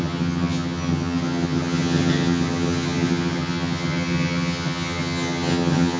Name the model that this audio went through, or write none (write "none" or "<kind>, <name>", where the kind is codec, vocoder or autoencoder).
vocoder, HiFi-GAN